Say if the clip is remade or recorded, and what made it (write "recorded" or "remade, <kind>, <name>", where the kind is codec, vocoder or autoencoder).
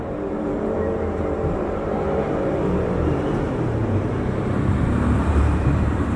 remade, vocoder, BigVGAN v2